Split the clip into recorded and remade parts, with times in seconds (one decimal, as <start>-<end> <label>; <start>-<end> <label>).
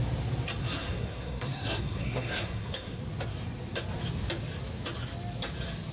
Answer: 0.0-0.6 recorded; 0.6-3.0 remade; 3.0-5.9 recorded